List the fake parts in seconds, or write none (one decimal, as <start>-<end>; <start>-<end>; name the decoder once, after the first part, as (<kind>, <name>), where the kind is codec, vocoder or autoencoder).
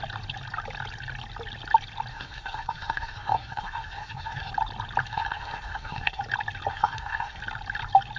2.1-4.5 (codec, SNAC); 5.1-6.2; 6.7-7.4